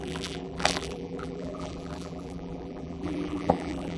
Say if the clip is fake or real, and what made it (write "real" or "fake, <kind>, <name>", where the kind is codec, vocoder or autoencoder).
fake, vocoder, BigVGAN v2